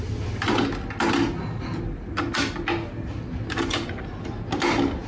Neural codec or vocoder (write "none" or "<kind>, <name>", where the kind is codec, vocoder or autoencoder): none